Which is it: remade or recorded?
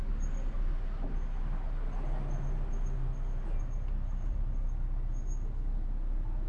recorded